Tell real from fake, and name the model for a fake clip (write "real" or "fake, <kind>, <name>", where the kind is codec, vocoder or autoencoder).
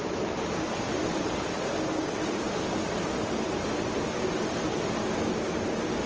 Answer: real